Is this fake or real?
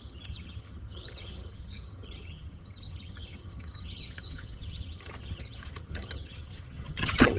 fake